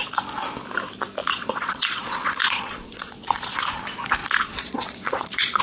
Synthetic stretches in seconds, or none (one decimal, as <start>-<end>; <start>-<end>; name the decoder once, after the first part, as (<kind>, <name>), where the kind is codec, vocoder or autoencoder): 1.2-3.8 (vocoder, Vocos); 4.2-5.6